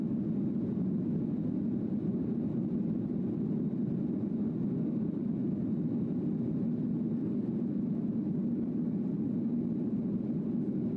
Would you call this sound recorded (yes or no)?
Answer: yes